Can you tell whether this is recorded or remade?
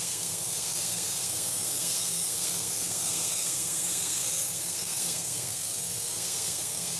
remade